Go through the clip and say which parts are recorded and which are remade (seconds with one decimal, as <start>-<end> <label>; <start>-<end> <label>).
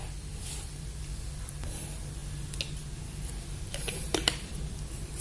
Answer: 0.0-2.2 remade; 2.2-4.5 recorded; 4.5-5.2 remade